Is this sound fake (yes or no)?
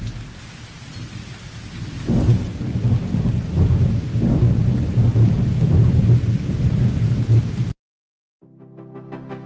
no